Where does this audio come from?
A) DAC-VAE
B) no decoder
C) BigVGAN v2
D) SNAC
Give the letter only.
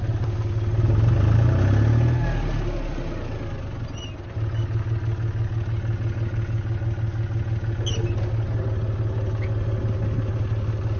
B